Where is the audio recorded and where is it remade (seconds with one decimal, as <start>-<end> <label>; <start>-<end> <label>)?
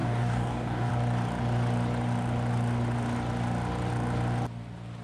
0.0-0.9 remade; 0.9-5.0 recorded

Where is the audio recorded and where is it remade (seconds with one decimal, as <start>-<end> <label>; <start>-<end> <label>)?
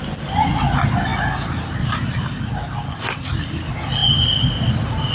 0.0-5.1 recorded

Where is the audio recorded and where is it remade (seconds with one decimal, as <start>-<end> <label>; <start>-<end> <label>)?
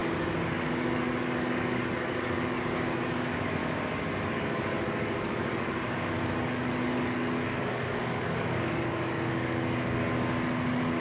0.0-3.6 remade; 3.6-4.3 recorded; 4.3-11.0 remade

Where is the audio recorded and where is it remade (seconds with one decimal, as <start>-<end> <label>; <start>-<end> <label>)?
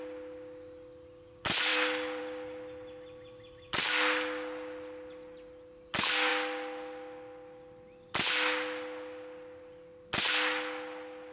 0.0-11.3 recorded